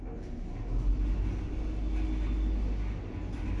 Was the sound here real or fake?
real